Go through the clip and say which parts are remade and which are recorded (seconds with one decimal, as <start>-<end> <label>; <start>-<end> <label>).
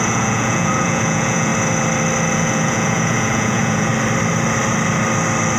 0.0-1.5 remade; 1.5-2.3 recorded; 2.3-3.9 remade; 3.9-5.6 recorded